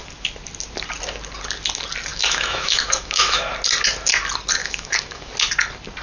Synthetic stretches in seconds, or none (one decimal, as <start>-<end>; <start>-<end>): 2.1-3.5; 4.6-5.3

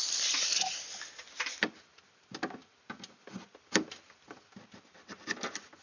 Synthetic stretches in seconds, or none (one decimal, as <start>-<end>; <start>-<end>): none

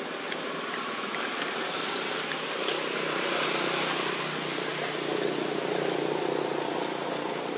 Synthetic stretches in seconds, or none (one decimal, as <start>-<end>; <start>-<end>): none